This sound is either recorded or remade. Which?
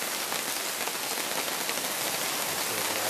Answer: recorded